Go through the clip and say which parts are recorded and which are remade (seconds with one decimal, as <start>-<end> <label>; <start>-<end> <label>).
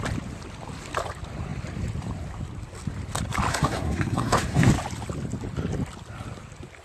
0.0-3.5 recorded; 3.5-4.7 remade; 4.7-6.8 recorded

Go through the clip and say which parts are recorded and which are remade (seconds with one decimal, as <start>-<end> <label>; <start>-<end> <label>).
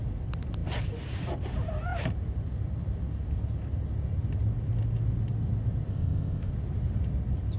0.0-5.9 recorded; 5.9-6.5 remade; 6.5-7.6 recorded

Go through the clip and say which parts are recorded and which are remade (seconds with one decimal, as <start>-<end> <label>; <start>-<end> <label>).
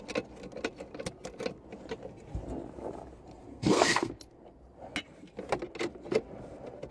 0.0-3.5 recorded; 3.5-4.1 remade; 4.1-6.9 recorded